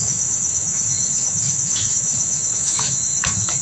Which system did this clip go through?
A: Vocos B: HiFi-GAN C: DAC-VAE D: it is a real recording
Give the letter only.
C